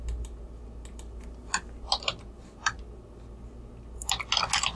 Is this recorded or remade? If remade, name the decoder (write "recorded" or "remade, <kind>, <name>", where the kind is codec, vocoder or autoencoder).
recorded